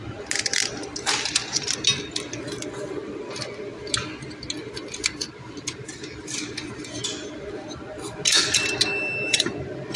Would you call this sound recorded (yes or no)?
yes